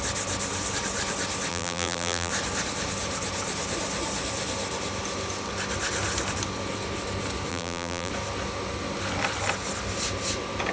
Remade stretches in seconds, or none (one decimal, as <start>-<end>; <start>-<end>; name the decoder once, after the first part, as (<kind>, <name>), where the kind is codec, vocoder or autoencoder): 1.5-2.3 (vocoder, BigVGAN v2); 7.5-8.1